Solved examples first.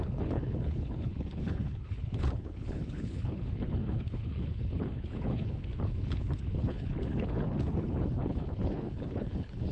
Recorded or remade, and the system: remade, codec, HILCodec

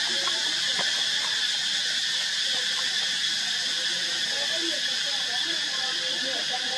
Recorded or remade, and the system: recorded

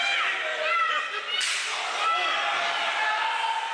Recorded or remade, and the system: recorded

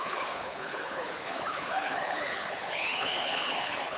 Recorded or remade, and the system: remade, codec, HILCodec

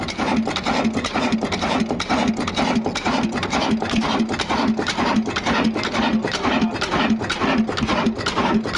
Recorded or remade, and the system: recorded